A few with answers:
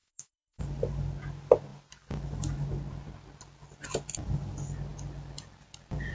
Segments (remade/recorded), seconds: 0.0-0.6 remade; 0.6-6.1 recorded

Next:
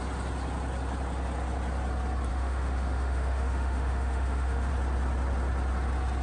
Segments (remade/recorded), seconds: 0.0-2.3 recorded; 2.3-4.7 remade; 4.7-6.2 recorded

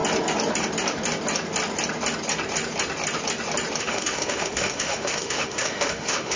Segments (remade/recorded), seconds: 0.0-3.8 recorded; 3.8-6.4 remade

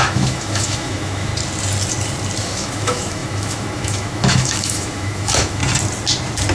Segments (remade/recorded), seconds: 0.0-1.3 remade; 1.3-2.4 recorded; 2.4-5.6 remade; 5.6-6.5 recorded

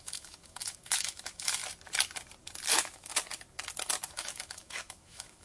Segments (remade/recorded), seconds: 0.0-1.6 remade; 1.6-2.7 recorded; 2.7-3.1 remade; 3.1-4.1 recorded; 4.1-5.4 remade

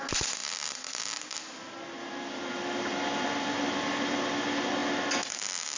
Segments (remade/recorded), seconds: 0.0-5.8 recorded